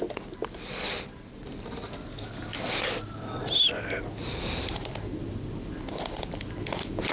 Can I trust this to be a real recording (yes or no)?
yes